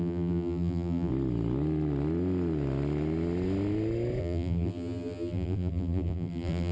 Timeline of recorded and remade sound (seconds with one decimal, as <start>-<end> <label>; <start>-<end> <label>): 0.0-1.1 remade; 1.1-4.2 recorded; 4.2-6.7 remade